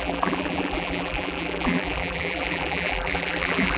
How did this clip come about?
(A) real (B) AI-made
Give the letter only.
B